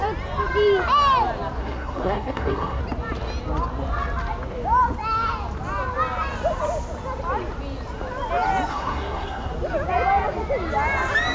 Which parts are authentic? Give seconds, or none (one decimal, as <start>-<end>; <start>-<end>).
0.0-1.6; 2.8-8.7; 9.5-11.3